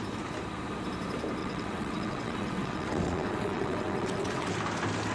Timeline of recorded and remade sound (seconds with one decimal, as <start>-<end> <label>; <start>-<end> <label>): 0.0-1.4 recorded; 1.4-4.5 remade; 4.5-5.1 recorded

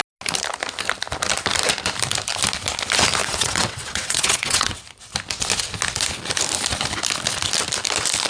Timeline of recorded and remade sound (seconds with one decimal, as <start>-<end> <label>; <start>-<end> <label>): 0.0-3.2 recorded; 3.2-4.8 remade; 4.8-8.3 recorded

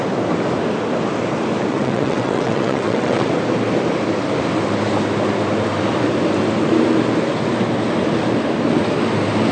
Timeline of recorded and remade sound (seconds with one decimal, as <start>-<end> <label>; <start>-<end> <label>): 0.0-1.7 recorded; 1.7-3.3 remade; 3.3-9.5 recorded

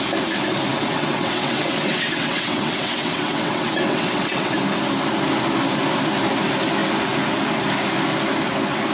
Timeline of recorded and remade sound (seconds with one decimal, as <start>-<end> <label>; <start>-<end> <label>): 0.0-0.7 recorded; 0.7-4.5 remade; 4.5-8.9 recorded